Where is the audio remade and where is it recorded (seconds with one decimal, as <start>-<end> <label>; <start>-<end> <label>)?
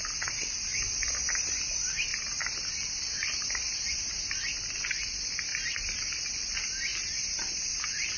0.0-5.5 recorded; 5.5-6.0 remade; 6.0-6.9 recorded; 6.9-8.2 remade